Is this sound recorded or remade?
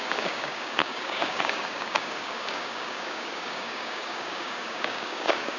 remade